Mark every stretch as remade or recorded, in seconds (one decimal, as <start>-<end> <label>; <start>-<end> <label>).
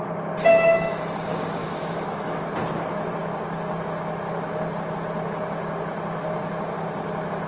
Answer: 0.0-0.5 recorded; 0.5-1.0 remade; 1.0-1.6 recorded; 1.6-2.4 remade; 2.4-7.5 recorded